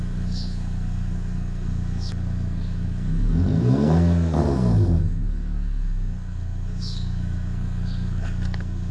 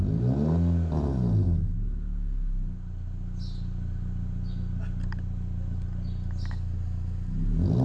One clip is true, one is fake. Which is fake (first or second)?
first